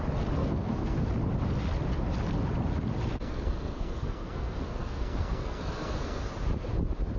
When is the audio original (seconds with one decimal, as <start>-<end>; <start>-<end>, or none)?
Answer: 0.0-0.4; 1.1-3.1; 6.3-7.2